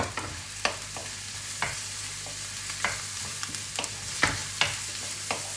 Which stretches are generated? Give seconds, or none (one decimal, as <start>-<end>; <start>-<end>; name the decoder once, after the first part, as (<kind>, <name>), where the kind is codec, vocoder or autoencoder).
none